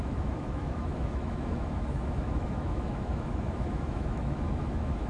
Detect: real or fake fake